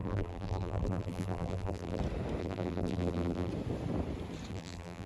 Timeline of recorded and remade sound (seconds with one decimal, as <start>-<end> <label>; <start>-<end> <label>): 0.0-2.0 remade; 2.0-2.4 recorded; 2.4-3.5 remade; 3.5-4.5 recorded; 4.5-5.1 remade